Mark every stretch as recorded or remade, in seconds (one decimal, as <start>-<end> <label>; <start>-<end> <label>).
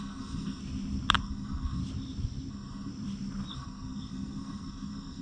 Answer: 0.0-0.6 remade; 0.6-1.2 recorded; 1.2-1.8 remade; 1.8-2.5 recorded; 2.5-2.9 remade; 2.9-3.5 recorded; 3.5-5.2 remade